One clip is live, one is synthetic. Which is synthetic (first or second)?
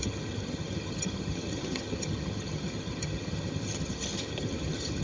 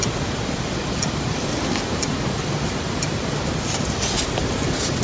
first